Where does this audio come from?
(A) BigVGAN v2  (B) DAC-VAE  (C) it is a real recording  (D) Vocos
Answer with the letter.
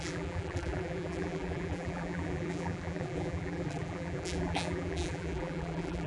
A